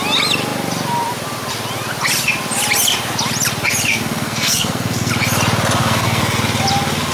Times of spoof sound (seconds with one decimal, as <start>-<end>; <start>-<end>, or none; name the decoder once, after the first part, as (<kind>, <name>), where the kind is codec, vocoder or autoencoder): 3.9-5.1 (codec, SNAC); 5.8-6.4